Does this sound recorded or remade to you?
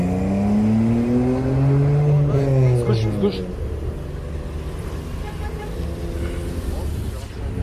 recorded